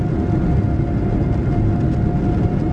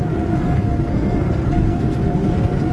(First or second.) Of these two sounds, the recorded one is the first